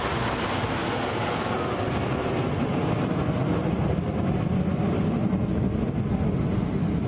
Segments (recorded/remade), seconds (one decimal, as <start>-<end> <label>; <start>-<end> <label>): 0.0-7.1 recorded